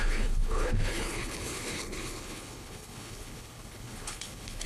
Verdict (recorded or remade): remade